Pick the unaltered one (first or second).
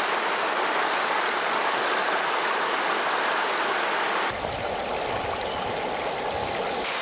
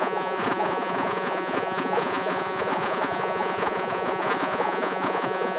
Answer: first